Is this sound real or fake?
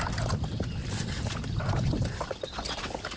fake